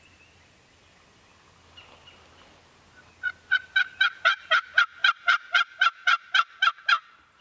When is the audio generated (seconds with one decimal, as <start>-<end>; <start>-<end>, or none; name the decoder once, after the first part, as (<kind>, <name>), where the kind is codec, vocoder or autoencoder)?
none